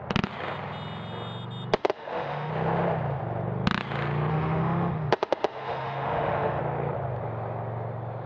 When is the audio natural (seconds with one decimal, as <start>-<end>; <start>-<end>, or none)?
0.0-1.8; 2.5-4.3; 6.6-8.3